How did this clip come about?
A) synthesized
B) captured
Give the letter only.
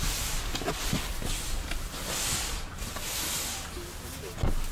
B